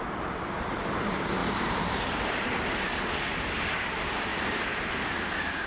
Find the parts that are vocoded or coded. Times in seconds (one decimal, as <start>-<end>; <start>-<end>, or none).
1.4-3.2; 4.3-5.2